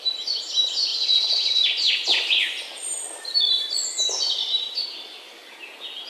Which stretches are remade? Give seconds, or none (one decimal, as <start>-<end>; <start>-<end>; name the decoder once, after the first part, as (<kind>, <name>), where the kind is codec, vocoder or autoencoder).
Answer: 0.0-4.4 (vocoder, BigVGAN v2); 4.9-5.4